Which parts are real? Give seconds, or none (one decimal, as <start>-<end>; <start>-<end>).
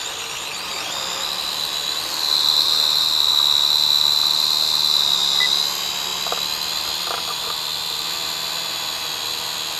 0.0-0.5; 3.3-9.8